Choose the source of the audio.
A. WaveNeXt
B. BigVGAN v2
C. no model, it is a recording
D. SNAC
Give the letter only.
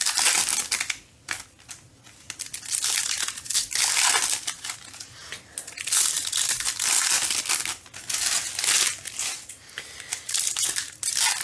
C